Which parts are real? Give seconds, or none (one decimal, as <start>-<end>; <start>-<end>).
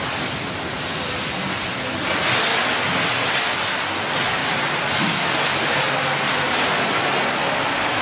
0.0-8.0